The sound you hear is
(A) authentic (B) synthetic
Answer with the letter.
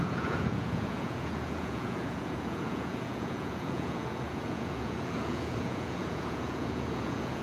B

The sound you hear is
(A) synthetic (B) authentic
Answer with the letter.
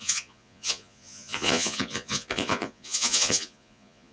A